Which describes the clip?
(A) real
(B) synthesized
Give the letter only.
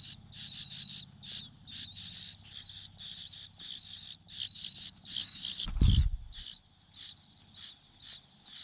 A